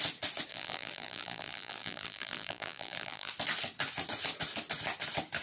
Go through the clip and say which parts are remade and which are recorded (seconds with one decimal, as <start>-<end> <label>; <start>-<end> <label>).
0.0-0.5 recorded; 0.5-3.3 remade; 3.3-5.4 recorded